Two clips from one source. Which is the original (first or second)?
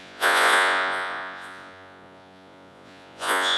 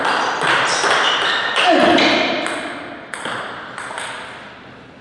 second